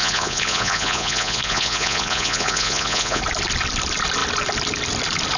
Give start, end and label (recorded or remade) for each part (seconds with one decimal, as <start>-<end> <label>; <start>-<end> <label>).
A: 0.0-3.2 remade; 3.2-5.4 recorded